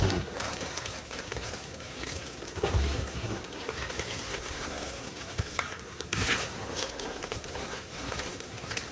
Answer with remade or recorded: remade